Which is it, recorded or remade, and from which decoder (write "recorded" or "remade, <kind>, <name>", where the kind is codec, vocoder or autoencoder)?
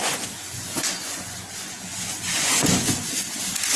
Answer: remade, vocoder, Vocos